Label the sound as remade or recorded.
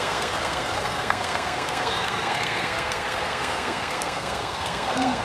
remade